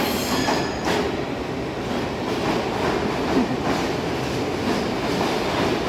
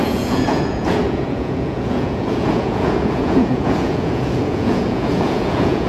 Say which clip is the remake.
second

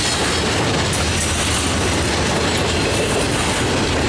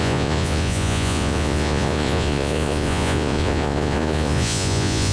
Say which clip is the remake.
second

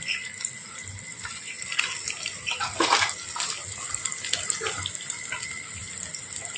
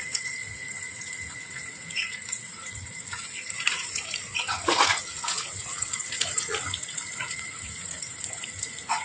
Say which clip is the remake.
second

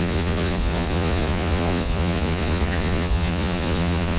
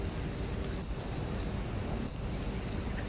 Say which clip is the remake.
first